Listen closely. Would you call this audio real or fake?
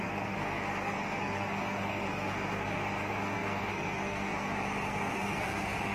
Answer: fake